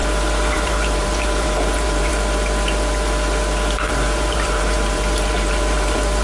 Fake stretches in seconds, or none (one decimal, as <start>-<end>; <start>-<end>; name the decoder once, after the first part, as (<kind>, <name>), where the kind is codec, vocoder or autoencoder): 0.5-2.1 (vocoder, BigVGAN v2); 3.9-6.2